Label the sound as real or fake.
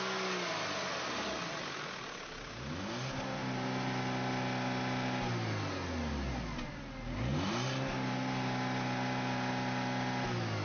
real